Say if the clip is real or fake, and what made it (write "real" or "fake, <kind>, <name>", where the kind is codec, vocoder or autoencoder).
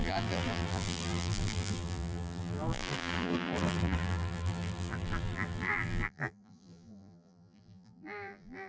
fake, vocoder, BigVGAN v2